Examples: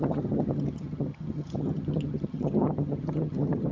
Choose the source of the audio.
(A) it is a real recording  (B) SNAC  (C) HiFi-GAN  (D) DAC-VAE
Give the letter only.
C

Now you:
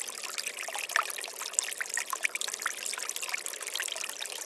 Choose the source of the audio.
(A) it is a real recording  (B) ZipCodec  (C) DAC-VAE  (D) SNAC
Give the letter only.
A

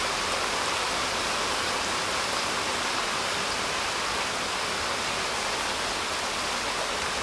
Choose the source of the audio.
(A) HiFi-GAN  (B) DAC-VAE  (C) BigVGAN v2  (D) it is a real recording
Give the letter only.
D